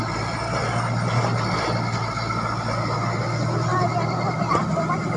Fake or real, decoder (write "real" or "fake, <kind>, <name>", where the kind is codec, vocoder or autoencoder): real